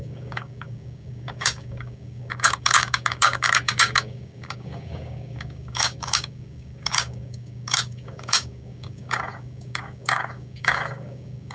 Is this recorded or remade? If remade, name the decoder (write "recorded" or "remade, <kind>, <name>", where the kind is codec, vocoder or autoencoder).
remade, codec, DAC